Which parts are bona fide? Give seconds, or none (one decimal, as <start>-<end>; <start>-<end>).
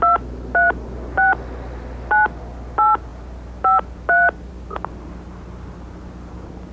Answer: 0.0-6.7